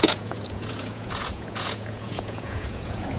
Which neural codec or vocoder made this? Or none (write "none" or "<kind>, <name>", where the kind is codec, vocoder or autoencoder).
vocoder, Vocos